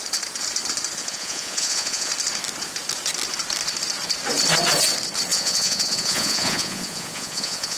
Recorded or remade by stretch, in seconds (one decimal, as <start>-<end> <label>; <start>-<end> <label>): 0.0-1.0 recorded; 1.0-2.1 remade; 2.1-5.3 recorded; 5.3-7.8 remade